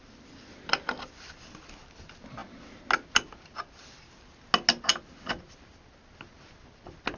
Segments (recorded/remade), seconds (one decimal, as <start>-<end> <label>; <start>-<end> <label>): 0.0-7.2 recorded